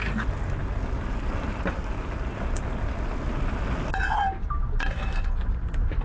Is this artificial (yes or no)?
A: no